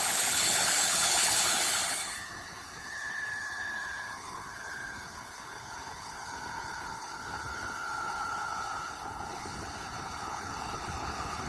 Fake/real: fake